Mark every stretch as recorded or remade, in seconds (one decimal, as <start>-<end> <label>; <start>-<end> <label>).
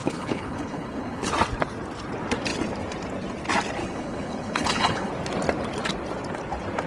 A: 0.0-1.3 remade; 1.3-3.8 recorded; 3.8-5.1 remade; 5.1-6.9 recorded